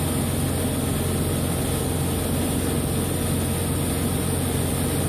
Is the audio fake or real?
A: real